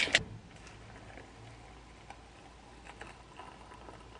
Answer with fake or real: real